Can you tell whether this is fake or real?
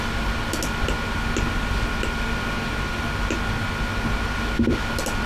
real